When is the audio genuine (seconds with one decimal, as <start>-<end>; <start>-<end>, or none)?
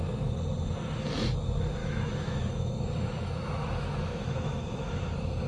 0.0-1.8; 5.0-5.5